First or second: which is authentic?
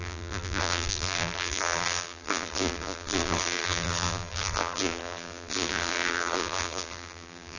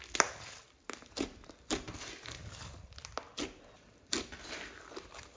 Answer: second